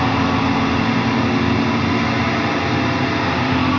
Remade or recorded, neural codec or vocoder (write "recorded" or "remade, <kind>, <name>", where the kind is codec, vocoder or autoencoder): recorded